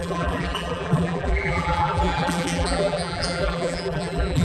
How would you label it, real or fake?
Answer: fake